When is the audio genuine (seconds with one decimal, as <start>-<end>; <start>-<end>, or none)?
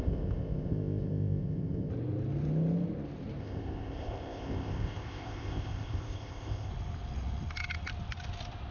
1.9-3.4; 6.7-8.7